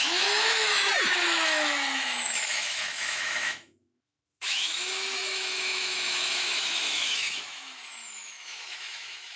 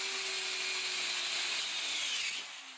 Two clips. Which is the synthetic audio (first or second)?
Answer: first